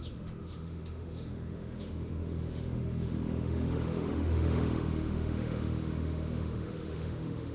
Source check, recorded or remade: remade